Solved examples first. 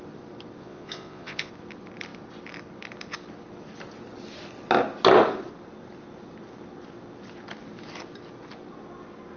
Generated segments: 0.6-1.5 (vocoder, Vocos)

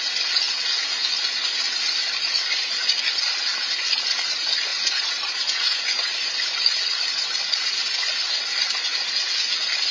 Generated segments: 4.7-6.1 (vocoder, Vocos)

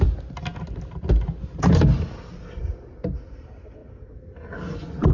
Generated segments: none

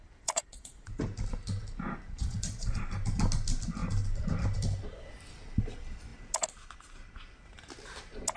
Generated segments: 0.0-1.0 (vocoder, Vocos); 2.1-2.8

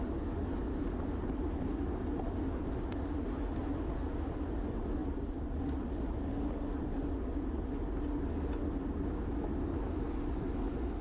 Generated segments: none